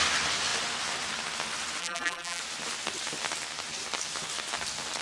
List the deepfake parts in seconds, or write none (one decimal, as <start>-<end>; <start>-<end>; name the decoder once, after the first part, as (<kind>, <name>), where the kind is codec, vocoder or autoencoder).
1.8-2.4 (vocoder, BigVGAN v2)